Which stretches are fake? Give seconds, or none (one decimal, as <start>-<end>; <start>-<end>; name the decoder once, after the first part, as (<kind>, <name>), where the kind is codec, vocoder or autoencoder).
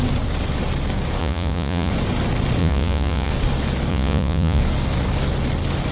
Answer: 1.2-1.9 (vocoder, Vocos); 2.6-3.3; 3.9-4.6